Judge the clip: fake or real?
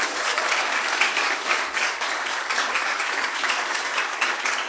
fake